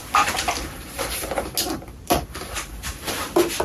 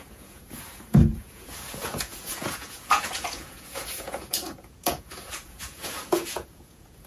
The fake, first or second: second